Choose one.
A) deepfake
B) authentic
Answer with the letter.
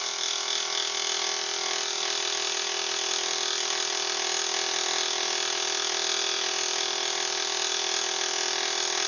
B